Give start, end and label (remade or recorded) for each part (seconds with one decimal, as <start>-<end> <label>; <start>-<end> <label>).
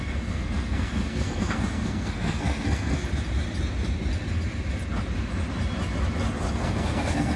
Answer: 0.0-3.0 remade; 3.0-6.5 recorded; 6.5-7.4 remade